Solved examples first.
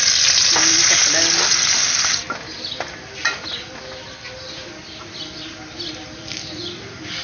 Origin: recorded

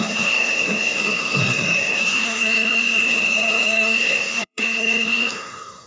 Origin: remade